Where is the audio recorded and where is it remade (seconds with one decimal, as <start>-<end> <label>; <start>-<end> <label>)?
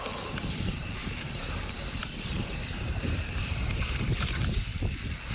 0.0-4.7 remade; 4.7-5.3 recorded